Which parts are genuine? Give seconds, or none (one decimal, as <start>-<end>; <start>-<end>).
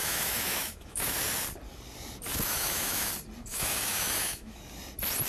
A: 1.2-2.3; 3.1-3.5; 4.6-5.3